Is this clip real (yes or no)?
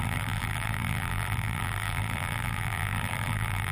no